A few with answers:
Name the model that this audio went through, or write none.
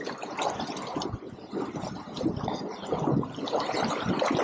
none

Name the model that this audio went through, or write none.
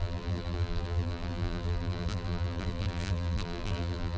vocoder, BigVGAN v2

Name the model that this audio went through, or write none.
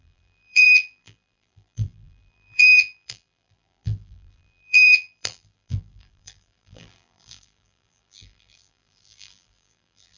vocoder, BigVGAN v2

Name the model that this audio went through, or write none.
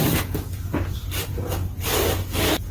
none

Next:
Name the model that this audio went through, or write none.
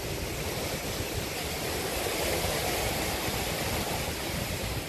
none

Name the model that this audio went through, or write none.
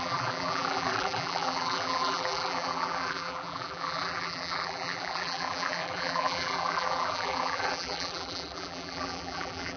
vocoder, BigVGAN v2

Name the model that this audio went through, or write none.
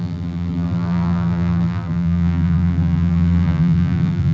vocoder, BigVGAN v2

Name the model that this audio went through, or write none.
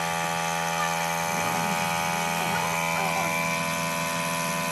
none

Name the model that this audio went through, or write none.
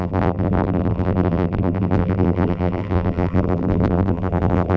vocoder, BigVGAN v2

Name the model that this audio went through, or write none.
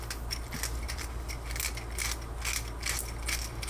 none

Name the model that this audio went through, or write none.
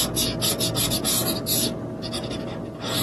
none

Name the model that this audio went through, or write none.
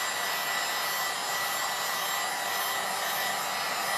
none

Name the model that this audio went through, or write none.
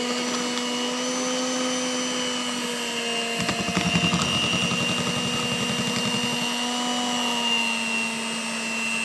none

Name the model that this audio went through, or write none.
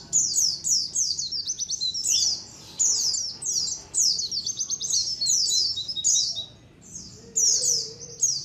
none